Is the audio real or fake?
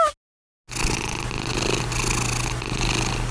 real